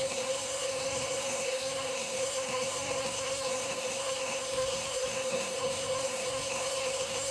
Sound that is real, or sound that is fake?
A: fake